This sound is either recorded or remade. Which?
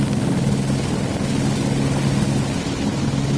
recorded